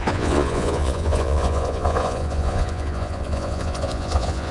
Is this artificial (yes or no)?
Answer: yes